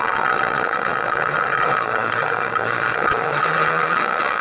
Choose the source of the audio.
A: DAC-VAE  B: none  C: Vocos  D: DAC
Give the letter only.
C